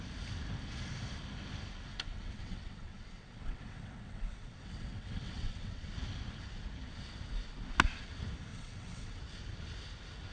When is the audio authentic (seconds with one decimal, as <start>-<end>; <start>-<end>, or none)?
0.0-1.9; 5.9-8.5; 9.2-10.3